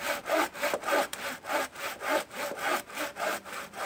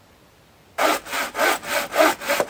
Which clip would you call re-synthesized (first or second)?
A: first